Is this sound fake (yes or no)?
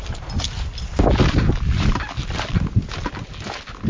no